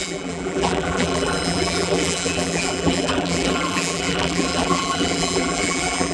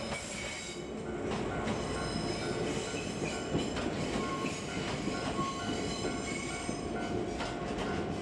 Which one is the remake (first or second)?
first